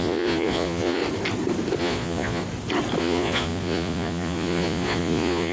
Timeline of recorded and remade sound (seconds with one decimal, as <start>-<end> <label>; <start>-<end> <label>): 0.0-1.0 remade; 1.0-1.8 recorded; 1.8-2.4 remade; 2.4-3.0 recorded; 3.0-5.5 remade